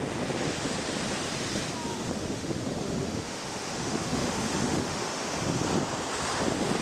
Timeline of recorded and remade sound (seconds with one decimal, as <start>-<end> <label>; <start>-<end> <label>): 0.0-1.9 recorded; 1.9-5.1 remade; 5.1-6.8 recorded